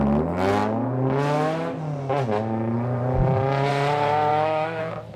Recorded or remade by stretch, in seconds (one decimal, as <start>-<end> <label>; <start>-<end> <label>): 0.0-4.3 recorded; 4.3-4.8 remade; 4.8-5.2 recorded